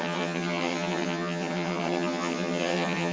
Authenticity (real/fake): fake